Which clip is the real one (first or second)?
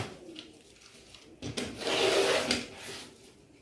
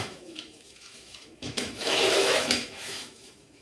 first